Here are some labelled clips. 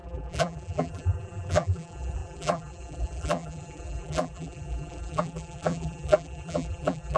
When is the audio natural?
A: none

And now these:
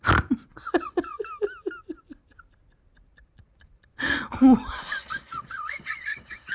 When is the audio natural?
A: 0.0-0.5; 1.2-3.1; 4.4-5.0

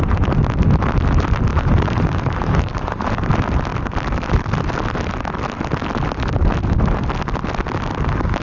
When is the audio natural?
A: 0.0-1.5; 3.3-8.4

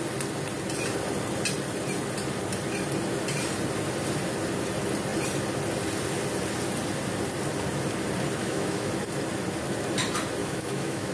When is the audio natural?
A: 0.0-8.4; 8.9-10.4

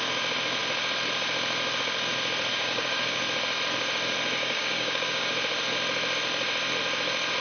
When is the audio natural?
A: 0.0-2.5; 3.2-4.4; 5.3-7.4